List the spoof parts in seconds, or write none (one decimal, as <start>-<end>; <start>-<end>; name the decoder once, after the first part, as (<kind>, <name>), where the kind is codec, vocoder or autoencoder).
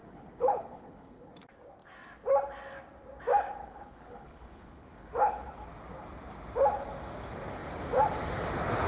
0.0-1.3 (codec, HILCodec); 3.6-5.7